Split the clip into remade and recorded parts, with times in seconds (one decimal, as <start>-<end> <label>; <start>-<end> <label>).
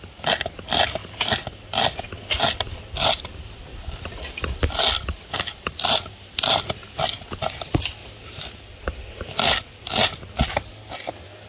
0.0-11.5 recorded